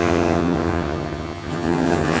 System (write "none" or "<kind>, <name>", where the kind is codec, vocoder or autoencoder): vocoder, HiFi-GAN